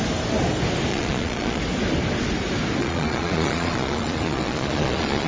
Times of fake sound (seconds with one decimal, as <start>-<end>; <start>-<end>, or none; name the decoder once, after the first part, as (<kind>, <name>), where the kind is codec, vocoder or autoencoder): 0.9-1.6 (vocoder, Vocos); 2.8-5.3